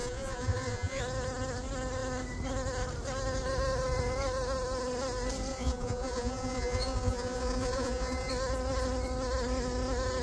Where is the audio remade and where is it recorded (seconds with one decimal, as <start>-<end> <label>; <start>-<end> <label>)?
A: 0.0-1.0 remade; 1.0-5.5 recorded; 5.5-8.3 remade; 8.3-10.2 recorded